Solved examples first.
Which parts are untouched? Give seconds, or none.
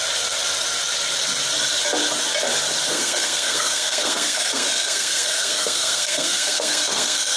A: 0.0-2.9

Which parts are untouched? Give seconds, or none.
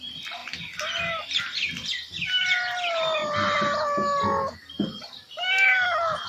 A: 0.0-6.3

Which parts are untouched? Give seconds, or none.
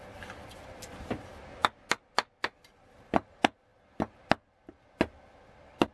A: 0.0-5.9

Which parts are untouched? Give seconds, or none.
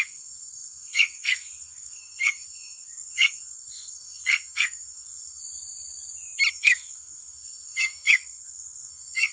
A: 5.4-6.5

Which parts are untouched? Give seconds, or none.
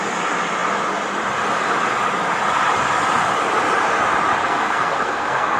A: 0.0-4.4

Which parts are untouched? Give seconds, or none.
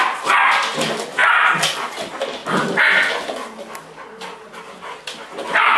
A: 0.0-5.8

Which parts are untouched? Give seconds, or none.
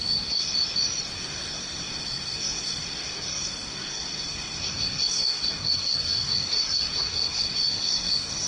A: 0.5-1.2